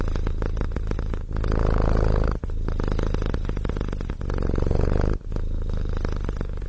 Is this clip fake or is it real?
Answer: real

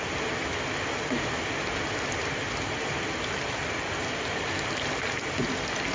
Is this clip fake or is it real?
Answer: real